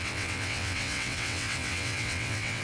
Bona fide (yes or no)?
no